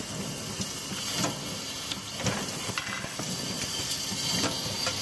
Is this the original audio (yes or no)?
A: yes